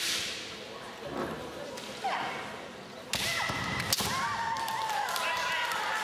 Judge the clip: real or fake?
real